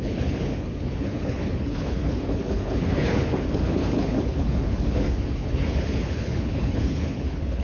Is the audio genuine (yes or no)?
no